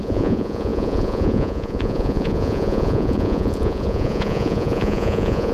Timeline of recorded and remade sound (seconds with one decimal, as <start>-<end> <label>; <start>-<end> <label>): 0.0-5.5 remade